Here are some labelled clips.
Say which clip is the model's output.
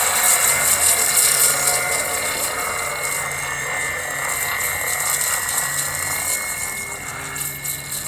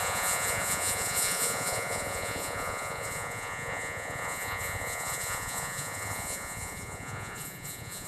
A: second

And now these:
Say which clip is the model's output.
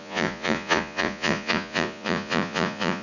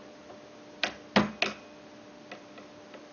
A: first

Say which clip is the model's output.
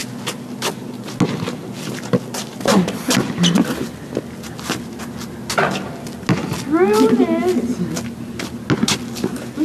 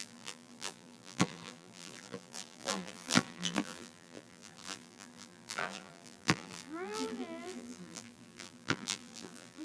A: second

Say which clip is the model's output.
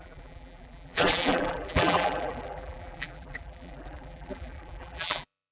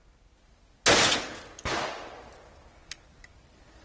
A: first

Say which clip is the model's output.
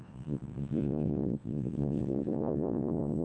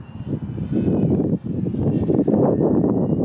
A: first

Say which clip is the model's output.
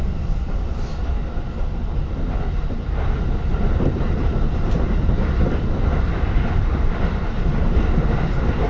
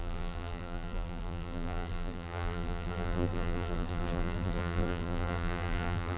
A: second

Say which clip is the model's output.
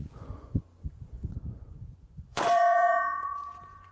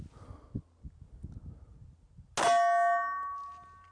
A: first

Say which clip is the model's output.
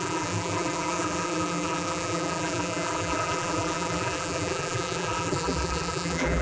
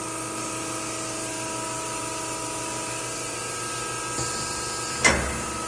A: first